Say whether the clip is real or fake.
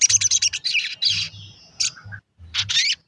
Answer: real